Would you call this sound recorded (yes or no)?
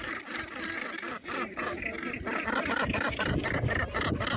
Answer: no